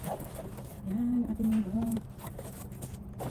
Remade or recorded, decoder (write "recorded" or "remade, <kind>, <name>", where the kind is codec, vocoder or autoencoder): recorded